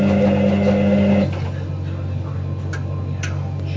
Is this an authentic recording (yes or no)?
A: yes